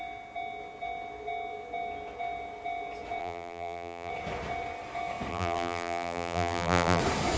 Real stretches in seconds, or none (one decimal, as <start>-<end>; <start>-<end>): 0.0-3.2; 4.1-5.3; 7.0-7.4

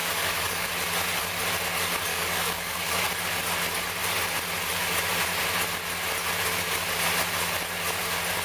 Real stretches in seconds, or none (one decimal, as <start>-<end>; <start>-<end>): 0.7-2.1; 3.0-8.4

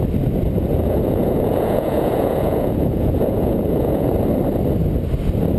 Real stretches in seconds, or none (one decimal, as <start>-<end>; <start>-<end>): 0.0-0.7; 4.1-5.6

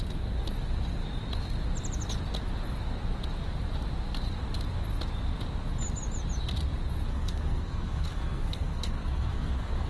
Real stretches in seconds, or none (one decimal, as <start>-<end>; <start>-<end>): 0.0-7.1

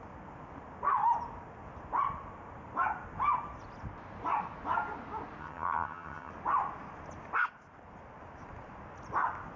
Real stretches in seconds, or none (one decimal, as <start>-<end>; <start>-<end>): 0.0-5.4; 6.3-9.6